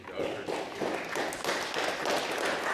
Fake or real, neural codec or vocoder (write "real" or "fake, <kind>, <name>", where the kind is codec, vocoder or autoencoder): real